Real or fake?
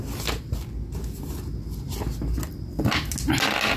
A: real